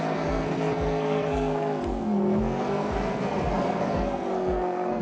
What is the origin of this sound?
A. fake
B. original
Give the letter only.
A